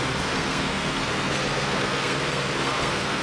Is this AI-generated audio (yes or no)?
yes